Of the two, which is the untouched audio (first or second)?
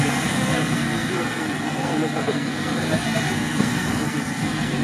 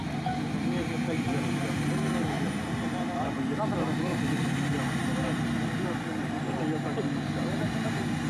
second